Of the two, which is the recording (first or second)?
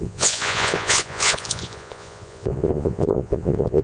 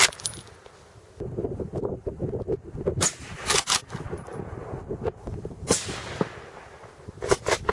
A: second